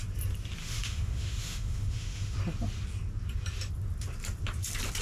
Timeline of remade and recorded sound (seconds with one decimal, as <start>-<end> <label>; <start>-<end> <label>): 0.0-0.6 recorded; 0.6-2.4 remade; 2.4-5.0 recorded